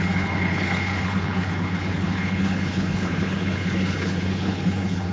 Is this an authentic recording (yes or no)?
no